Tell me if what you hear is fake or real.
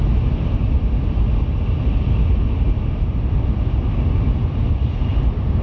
real